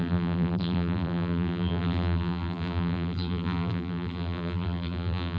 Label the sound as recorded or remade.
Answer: remade